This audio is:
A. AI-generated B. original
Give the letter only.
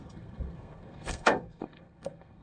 A